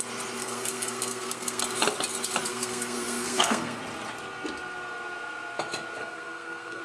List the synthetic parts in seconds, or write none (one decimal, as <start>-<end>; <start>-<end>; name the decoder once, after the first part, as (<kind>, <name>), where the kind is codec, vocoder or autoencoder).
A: 0.4-1.6 (codec, SNAC); 2.5-3.8; 6.0-6.8